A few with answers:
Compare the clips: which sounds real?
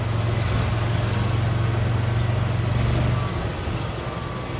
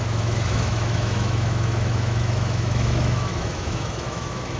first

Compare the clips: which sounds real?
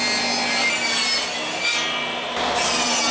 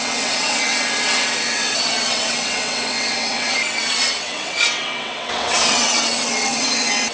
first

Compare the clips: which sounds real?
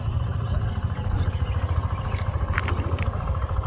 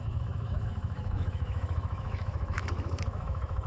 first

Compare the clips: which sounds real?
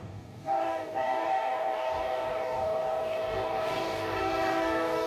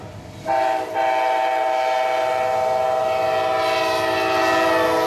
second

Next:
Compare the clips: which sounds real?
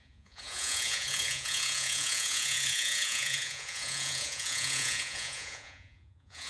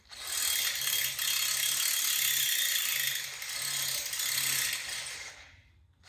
second